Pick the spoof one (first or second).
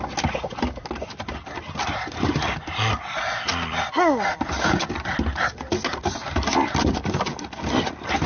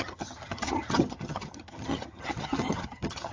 second